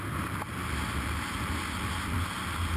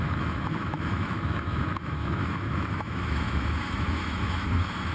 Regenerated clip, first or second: second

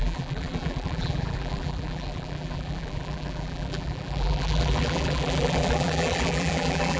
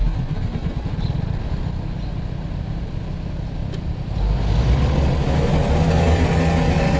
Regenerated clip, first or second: first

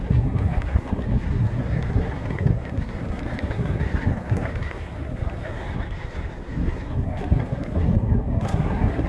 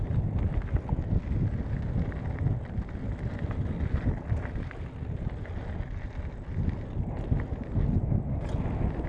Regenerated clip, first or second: first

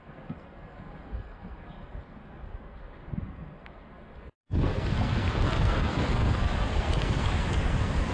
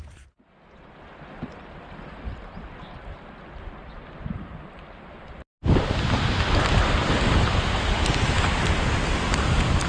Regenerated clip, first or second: first